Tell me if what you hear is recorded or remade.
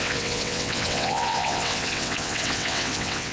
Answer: remade